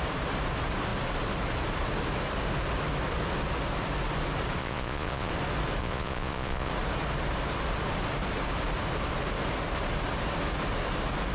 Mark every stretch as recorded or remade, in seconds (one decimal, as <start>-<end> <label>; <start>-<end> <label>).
0.0-4.6 recorded; 4.6-5.3 remade; 5.3-5.8 recorded; 5.8-6.7 remade; 6.7-11.3 recorded